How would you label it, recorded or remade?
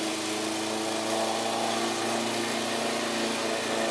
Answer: recorded